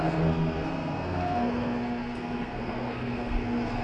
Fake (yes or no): yes